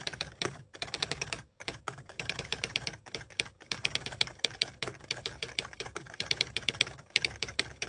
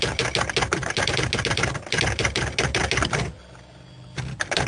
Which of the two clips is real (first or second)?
second